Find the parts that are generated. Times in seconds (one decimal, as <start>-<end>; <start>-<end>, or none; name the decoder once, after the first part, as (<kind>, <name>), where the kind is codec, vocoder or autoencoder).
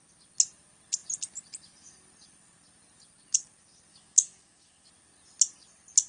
3.9-4.9 (autoencoder, DAC-VAE)